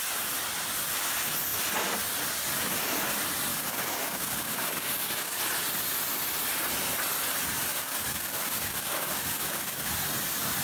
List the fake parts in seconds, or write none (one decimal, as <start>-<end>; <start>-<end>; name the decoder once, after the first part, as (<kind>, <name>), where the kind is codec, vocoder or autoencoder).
3.5-5.4 (codec, DAC); 7.7-9.9